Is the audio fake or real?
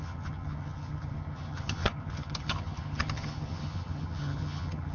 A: fake